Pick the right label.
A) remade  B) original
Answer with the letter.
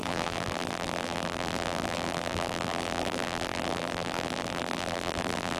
A